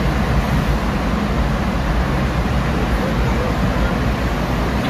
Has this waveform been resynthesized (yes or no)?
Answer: no